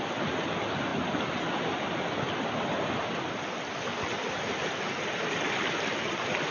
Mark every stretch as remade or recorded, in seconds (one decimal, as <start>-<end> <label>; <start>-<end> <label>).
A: 0.0-6.5 recorded